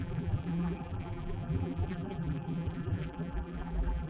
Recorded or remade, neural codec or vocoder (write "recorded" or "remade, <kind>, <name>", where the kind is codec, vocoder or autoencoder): remade, vocoder, BigVGAN v2